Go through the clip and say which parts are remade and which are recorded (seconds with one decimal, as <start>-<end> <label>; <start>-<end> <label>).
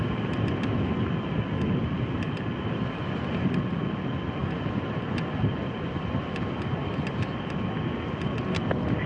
0.0-9.1 recorded